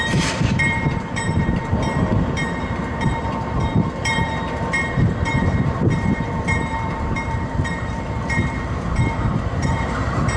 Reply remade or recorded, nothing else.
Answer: remade